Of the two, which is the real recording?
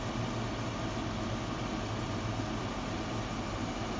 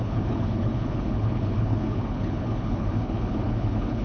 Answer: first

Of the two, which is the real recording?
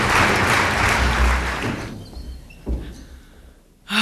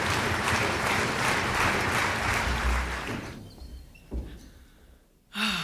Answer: first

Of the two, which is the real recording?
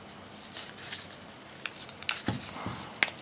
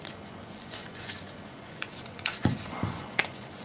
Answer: first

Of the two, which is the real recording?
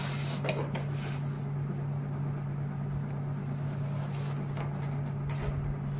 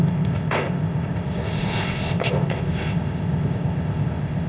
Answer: first